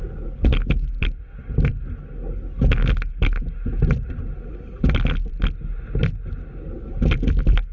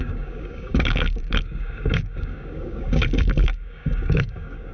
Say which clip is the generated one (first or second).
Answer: second